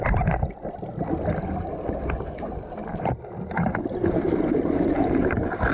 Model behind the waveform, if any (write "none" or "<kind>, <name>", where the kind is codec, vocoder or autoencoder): none